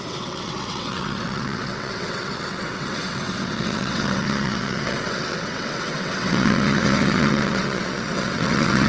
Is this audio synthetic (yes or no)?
yes